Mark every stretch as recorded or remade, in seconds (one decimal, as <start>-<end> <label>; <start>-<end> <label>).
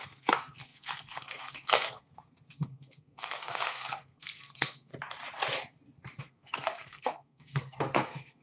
0.0-4.9 remade; 4.9-6.2 recorded; 6.2-8.4 remade